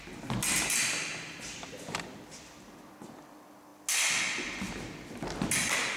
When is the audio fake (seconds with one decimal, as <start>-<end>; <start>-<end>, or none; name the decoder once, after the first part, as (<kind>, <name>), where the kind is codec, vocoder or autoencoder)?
none